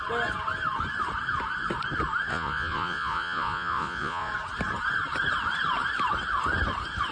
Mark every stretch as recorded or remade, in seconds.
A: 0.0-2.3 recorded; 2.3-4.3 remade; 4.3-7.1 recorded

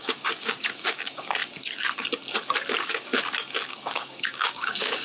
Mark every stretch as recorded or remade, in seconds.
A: 0.0-1.4 remade; 1.4-2.7 recorded; 2.7-3.1 remade; 3.1-3.7 recorded; 3.7-5.0 remade

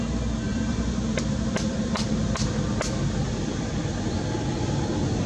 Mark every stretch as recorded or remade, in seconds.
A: 0.0-0.5 recorded; 0.5-3.7 remade; 3.7-5.3 recorded

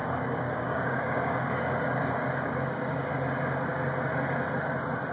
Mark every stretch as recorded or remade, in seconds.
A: 0.0-3.1 remade; 3.1-5.1 recorded